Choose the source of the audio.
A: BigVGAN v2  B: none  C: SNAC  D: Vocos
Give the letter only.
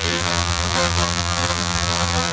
A